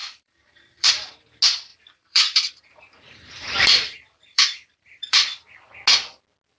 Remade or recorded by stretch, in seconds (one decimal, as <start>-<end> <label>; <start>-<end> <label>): 0.0-1.2 remade; 1.2-1.7 recorded; 1.7-5.7 remade; 5.7-6.6 recorded